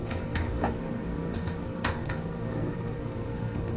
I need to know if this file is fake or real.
fake